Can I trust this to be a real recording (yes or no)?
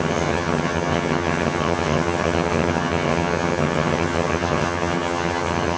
no